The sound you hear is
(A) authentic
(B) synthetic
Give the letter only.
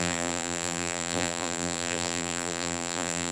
B